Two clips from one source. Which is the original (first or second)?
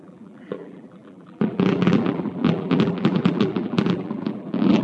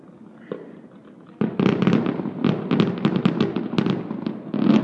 second